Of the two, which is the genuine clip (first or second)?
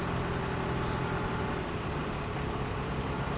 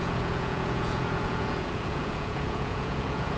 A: first